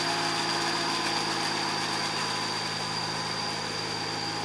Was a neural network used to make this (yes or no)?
no